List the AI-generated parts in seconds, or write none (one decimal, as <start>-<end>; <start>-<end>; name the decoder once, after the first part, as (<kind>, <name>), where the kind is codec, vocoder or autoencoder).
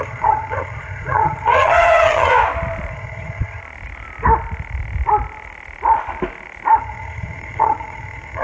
0.0-2.3 (vocoder, HiFi-GAN); 2.9-3.6; 6.8-8.4